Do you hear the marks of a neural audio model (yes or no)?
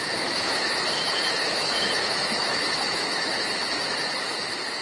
yes